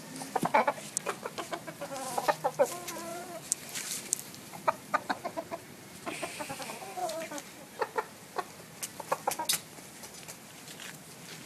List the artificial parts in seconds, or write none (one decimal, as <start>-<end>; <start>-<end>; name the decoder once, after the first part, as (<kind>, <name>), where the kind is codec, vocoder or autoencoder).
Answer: 3.1-6.5 (vocoder, BigVGAN v2); 7.0-8.1